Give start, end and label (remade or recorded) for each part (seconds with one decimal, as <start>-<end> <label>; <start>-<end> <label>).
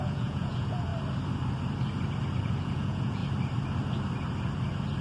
0.0-0.9 remade; 0.9-2.4 recorded; 2.4-3.2 remade; 3.2-5.0 recorded